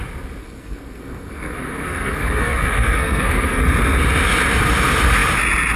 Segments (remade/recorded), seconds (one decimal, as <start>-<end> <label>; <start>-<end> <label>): 0.0-0.4 recorded; 0.4-3.6 remade; 3.6-5.8 recorded